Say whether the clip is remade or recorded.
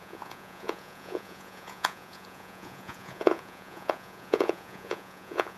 remade